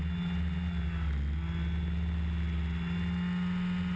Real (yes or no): yes